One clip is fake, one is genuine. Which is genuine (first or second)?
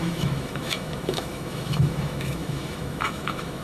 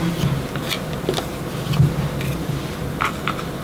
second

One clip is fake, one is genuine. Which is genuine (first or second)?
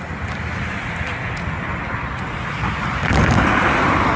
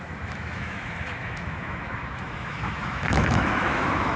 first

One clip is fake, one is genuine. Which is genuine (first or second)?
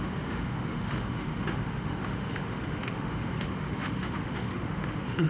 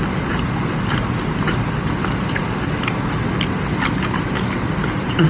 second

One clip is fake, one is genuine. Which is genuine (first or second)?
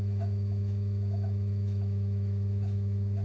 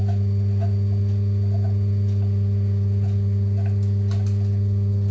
second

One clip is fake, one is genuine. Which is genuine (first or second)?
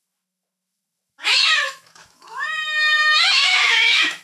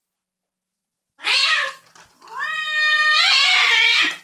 second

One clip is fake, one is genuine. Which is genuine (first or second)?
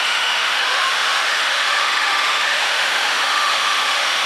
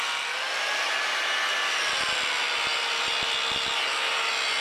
second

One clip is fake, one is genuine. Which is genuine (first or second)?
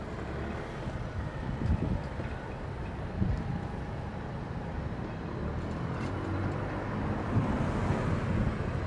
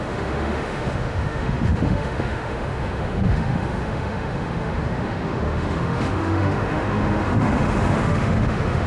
first